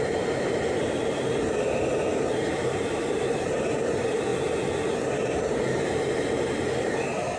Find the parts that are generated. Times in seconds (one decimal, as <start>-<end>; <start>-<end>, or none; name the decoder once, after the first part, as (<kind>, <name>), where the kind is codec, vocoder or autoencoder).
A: 0.0-7.4 (vocoder, BigVGAN v2)